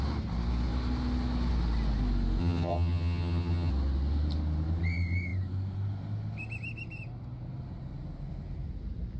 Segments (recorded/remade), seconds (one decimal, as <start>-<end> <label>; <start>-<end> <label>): 0.0-2.4 recorded; 2.4-3.7 remade; 3.7-9.2 recorded